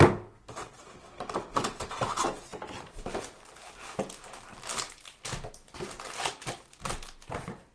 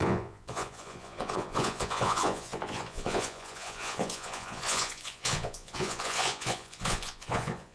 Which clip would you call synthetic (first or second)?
second